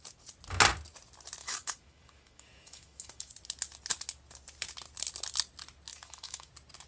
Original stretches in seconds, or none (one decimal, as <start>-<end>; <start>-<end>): 0.0-1.4; 3.3-5.9; 6.5-6.9